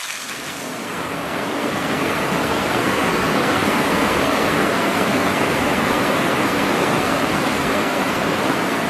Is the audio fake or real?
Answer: fake